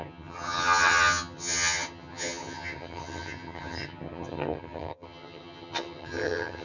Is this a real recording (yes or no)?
no